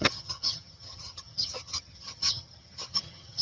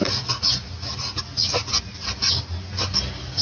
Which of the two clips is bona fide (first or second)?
second